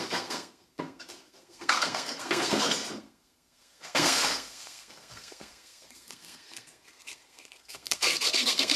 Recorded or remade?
remade